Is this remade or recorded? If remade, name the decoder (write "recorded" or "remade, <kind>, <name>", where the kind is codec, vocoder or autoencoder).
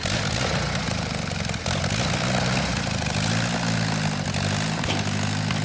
recorded